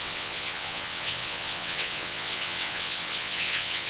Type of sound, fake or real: fake